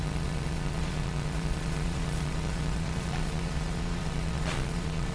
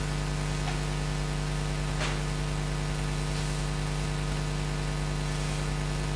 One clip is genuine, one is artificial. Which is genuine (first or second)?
second